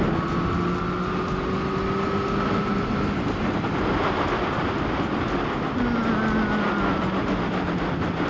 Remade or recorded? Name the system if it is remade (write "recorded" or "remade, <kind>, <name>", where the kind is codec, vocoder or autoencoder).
recorded